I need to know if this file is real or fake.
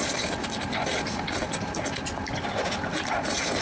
real